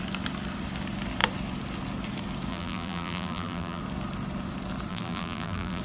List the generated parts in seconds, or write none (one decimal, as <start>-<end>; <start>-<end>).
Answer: 2.5-3.8; 4.9-5.8